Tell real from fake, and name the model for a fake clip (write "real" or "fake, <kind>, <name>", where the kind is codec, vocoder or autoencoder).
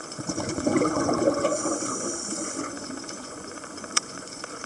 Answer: fake, vocoder, Vocos